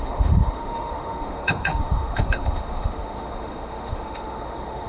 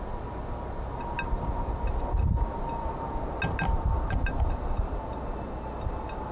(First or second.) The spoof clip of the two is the first